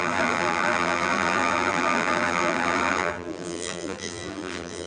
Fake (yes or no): yes